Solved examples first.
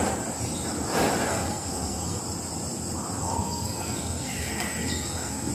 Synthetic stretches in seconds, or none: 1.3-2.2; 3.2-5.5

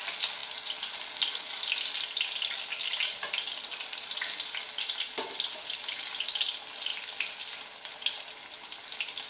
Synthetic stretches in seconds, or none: none

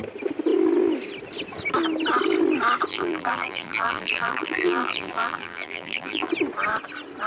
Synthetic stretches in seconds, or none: 2.9-6.3